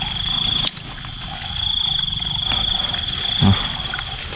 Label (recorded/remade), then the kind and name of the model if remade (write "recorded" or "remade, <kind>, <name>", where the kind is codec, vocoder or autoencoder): recorded